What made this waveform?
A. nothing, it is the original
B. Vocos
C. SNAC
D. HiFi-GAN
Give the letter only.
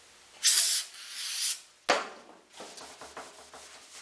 A